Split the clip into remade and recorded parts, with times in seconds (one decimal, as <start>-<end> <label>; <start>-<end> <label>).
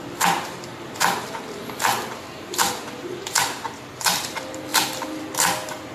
0.0-5.9 remade